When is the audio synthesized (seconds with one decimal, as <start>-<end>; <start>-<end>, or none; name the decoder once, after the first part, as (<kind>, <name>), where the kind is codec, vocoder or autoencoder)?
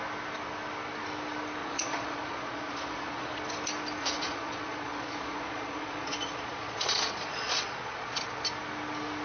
1.6-3.4 (vocoder, Vocos); 4.0-8.2